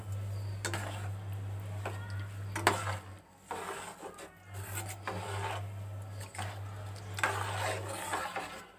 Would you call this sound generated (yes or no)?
no